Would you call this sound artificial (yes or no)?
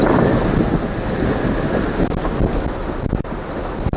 no